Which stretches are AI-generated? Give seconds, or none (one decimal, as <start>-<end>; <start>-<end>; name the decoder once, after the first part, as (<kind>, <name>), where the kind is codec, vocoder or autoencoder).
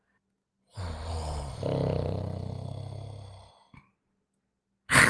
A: none